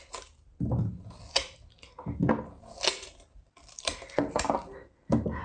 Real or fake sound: real